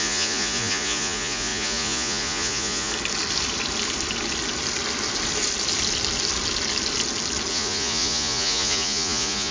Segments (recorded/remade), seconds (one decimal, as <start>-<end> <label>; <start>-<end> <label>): 0.0-2.9 remade; 2.9-7.5 recorded; 7.5-9.5 remade